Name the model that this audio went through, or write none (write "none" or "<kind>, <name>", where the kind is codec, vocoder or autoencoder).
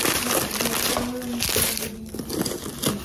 none